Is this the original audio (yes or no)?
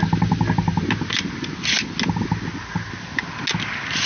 yes